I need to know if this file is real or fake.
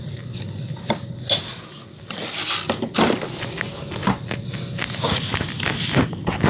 real